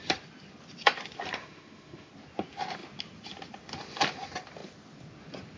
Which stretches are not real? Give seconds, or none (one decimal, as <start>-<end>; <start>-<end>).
1.4-2.1